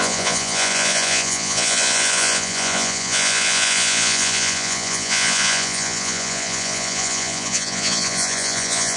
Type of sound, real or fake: fake